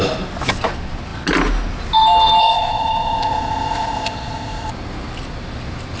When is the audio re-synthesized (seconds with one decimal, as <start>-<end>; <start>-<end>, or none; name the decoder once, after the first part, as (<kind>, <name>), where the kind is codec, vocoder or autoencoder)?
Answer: 2.4-4.7 (codec, ZipCodec)